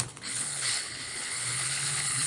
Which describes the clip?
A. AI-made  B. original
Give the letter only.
A